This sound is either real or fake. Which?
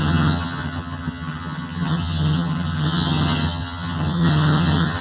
fake